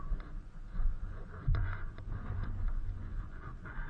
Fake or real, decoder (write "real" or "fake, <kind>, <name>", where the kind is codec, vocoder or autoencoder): fake, vocoder, Vocos